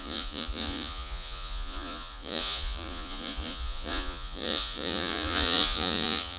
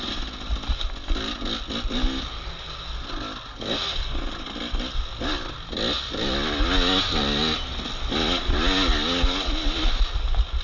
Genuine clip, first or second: second